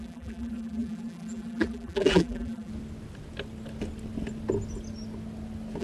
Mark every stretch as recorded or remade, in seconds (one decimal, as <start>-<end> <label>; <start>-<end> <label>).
0.0-2.7 remade; 2.7-5.8 recorded

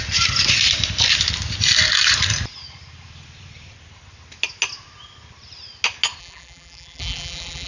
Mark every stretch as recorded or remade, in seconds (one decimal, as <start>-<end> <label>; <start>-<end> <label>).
0.0-6.2 recorded; 6.2-7.7 remade

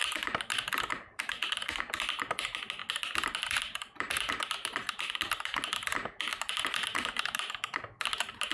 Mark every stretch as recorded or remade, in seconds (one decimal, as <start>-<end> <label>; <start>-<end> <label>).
0.0-1.8 remade; 1.8-8.5 recorded

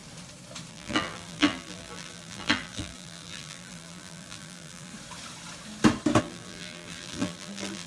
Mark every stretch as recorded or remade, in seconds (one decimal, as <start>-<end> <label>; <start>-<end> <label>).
0.0-0.7 recorded; 0.7-4.9 remade; 4.9-6.2 recorded; 6.2-7.9 remade